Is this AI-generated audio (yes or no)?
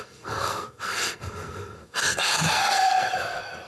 yes